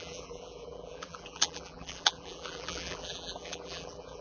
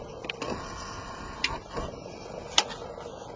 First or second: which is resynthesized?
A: first